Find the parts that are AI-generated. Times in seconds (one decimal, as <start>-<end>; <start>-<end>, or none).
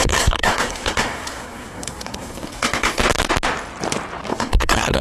0.0-3.0; 4.3-5.0